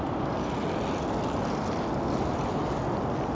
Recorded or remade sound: recorded